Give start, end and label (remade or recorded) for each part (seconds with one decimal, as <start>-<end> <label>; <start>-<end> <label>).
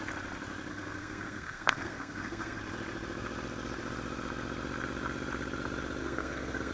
0.0-0.7 recorded; 0.7-2.6 remade; 2.6-6.0 recorded; 6.0-6.7 remade